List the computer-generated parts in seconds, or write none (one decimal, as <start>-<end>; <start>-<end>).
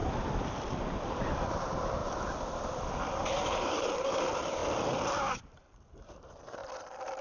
1.4-2.0; 3.4-4.6; 5.2-6.6